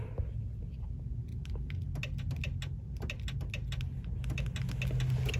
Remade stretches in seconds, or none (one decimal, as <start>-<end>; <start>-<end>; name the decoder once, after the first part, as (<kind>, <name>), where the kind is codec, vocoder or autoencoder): none